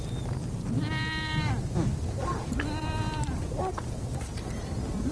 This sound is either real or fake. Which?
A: real